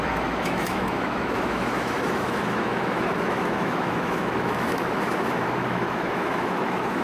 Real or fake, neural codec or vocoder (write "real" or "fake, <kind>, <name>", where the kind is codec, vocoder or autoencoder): fake, autoencoder, DAC-VAE